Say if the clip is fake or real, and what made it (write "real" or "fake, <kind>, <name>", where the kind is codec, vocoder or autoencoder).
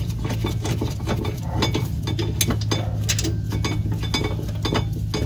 real